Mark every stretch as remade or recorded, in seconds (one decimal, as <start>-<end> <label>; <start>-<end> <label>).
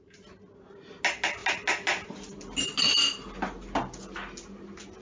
0.0-5.0 recorded